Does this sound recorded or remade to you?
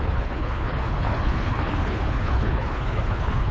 remade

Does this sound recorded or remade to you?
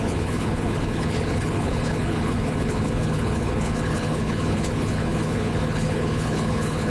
remade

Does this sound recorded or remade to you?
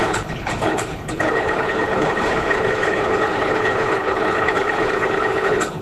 remade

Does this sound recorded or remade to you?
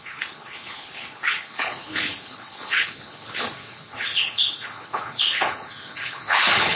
remade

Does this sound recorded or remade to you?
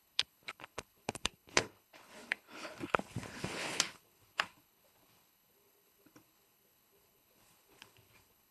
remade